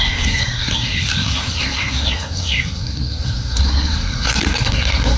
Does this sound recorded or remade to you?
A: remade